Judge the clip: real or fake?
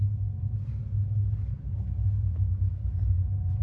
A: real